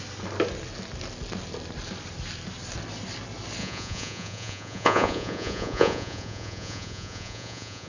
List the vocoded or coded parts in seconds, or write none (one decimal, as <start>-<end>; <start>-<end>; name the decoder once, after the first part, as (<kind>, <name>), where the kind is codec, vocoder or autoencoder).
3.6-7.9 (vocoder, Vocos)